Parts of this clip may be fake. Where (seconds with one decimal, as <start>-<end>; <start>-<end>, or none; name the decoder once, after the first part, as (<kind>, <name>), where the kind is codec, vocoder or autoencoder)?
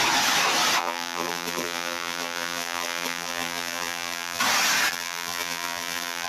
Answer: 0.8-4.4 (vocoder, BigVGAN v2); 4.9-6.3